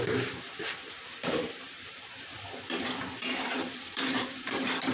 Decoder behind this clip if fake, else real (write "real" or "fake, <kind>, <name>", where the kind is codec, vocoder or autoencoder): fake, vocoder, BigVGAN v2